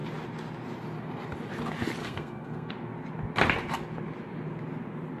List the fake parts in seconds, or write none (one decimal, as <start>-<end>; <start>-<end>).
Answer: 2.0-2.7